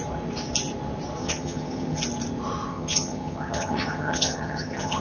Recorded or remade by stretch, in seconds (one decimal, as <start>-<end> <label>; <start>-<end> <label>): 0.0-1.2 recorded; 1.2-2.0 remade; 2.0-2.7 recorded; 2.7-5.0 remade